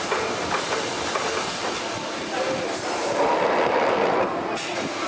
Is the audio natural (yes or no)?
yes